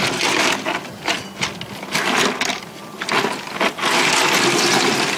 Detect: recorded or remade recorded